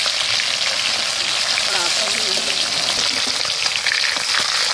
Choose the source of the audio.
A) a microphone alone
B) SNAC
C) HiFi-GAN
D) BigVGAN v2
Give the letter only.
A